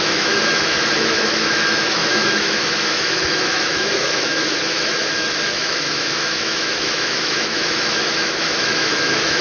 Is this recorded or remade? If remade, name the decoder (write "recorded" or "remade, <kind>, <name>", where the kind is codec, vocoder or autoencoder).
remade, autoencoder, DAC-VAE